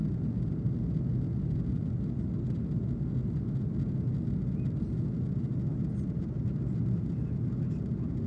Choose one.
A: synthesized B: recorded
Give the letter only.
B